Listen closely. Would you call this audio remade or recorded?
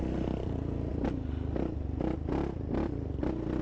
recorded